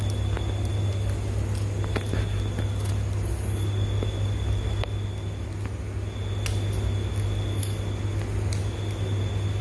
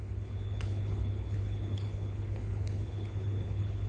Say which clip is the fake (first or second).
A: second